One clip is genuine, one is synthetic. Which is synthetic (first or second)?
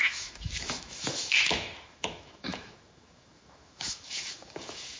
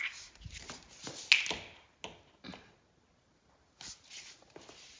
first